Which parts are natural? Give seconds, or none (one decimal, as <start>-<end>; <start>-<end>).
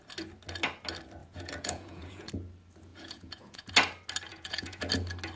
0.0-1.2; 2.3-2.9; 3.7-4.3; 4.8-5.4